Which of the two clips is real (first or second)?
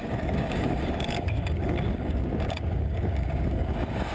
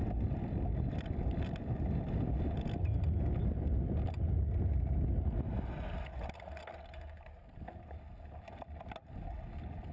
second